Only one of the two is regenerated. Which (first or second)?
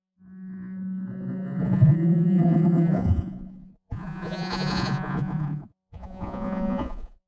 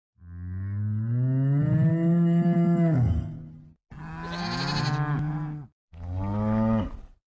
first